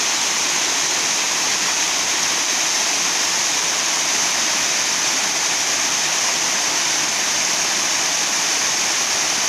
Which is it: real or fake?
real